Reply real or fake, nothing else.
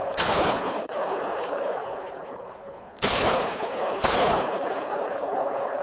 fake